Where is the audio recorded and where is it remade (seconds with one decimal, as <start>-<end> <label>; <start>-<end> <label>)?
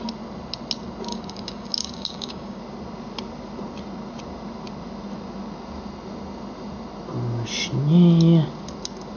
0.0-1.1 recorded; 1.1-2.6 remade; 2.6-9.2 recorded